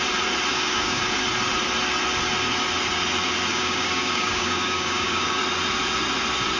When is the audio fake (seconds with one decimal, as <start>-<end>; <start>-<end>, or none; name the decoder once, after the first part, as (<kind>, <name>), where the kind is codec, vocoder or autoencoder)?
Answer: 0.5-1.0 (codec, DAC); 3.5-5.4